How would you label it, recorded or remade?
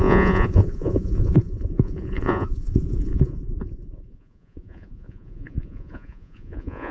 remade